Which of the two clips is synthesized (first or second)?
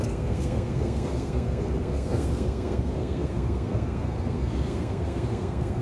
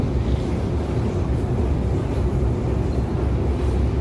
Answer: first